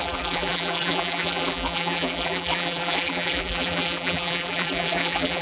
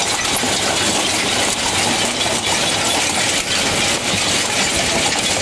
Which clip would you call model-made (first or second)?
first